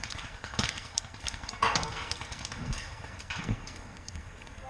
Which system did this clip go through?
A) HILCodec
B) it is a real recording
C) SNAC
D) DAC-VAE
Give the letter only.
C